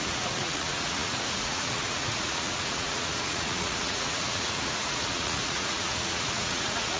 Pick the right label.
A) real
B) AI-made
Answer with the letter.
B